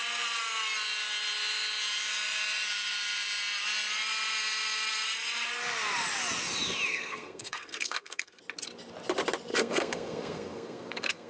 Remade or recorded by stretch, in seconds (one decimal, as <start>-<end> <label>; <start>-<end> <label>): 0.0-6.9 recorded; 6.9-8.4 remade; 8.4-9.5 recorded; 9.5-11.3 remade